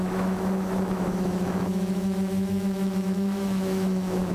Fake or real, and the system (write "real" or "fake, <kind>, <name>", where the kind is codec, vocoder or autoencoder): fake, autoencoder, DAC-VAE